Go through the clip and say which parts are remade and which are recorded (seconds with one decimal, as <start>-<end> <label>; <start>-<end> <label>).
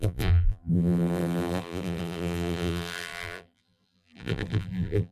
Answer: 0.0-5.1 remade